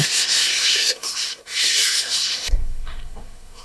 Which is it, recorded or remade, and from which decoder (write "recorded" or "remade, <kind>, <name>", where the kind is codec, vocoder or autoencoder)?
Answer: remade, codec, SNAC